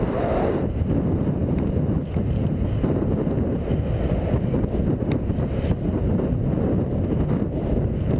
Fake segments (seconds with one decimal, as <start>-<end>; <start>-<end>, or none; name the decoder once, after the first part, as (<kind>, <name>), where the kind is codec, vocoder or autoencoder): none